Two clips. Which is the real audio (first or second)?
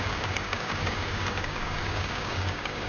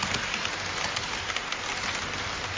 second